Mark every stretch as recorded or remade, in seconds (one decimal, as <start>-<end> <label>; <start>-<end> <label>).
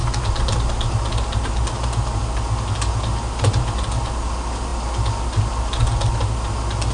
0.0-6.9 recorded